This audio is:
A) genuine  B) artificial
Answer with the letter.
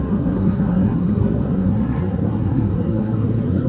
B